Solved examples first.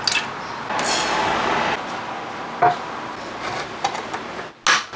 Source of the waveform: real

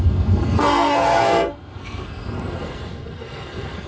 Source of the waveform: fake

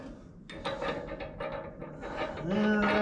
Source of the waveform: real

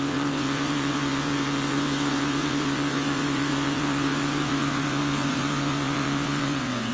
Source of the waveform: fake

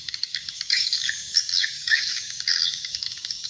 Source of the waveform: fake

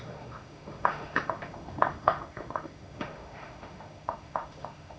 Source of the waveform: fake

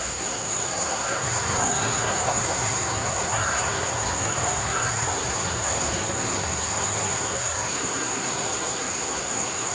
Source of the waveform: fake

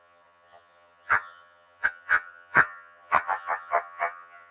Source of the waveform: fake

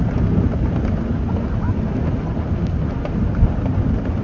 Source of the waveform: real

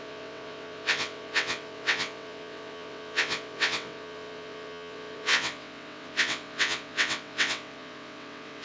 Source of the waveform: fake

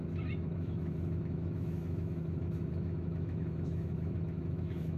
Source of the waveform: fake